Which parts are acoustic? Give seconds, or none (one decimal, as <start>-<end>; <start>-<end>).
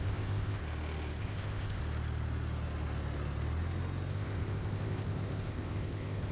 0.6-1.2; 1.8-4.1